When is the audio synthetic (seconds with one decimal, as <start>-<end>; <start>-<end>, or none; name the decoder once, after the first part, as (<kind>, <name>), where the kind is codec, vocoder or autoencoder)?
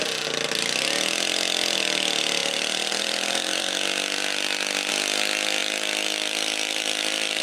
2.4-4.9 (vocoder, BigVGAN v2); 5.6-7.4